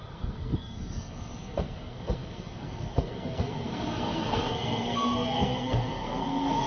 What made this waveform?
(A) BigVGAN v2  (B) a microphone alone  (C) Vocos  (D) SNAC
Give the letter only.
D